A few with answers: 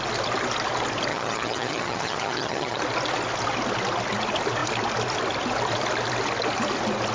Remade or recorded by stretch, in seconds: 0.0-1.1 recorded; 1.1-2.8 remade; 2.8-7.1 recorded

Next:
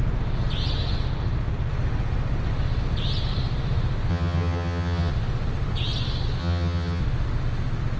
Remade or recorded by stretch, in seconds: 0.0-4.1 recorded; 4.1-5.1 remade; 5.1-6.4 recorded; 6.4-7.0 remade; 7.0-8.0 recorded